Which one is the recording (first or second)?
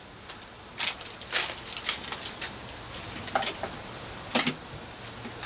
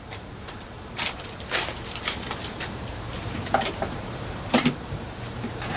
first